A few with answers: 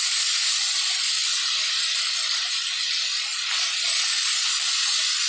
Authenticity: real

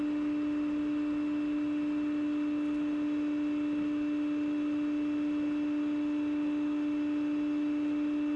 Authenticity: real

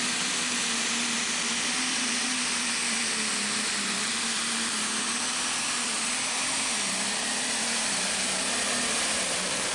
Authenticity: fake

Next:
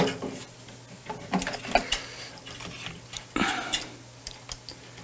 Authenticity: real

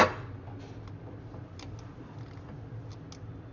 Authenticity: real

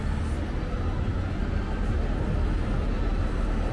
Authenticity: real